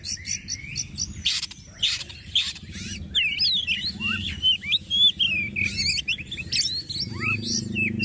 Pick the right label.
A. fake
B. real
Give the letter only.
B